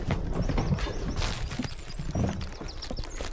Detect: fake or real real